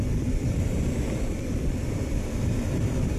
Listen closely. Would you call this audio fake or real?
real